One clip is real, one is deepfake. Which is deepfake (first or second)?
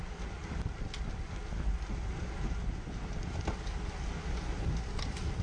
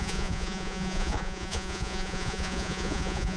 second